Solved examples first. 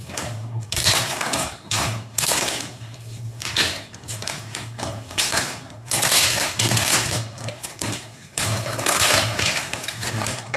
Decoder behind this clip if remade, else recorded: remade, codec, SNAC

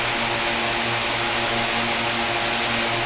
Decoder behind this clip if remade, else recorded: recorded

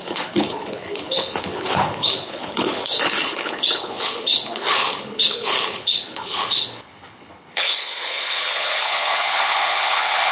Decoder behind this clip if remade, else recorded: remade, codec, HILCodec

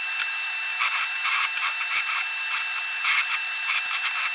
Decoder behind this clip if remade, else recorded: recorded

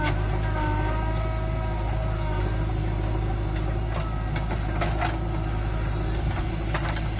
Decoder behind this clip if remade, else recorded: recorded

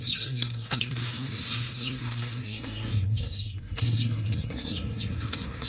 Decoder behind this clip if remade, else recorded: remade, codec, SNAC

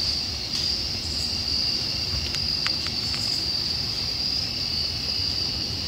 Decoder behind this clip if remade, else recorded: recorded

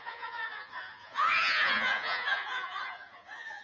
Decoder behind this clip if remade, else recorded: remade, vocoder, Vocos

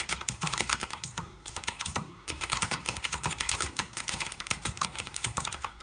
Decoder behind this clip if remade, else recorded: remade, codec, SNAC